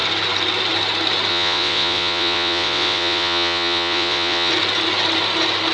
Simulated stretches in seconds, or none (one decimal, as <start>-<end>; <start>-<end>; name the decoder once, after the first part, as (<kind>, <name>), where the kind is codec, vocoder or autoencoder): 1.3-4.5 (vocoder, WaveNeXt)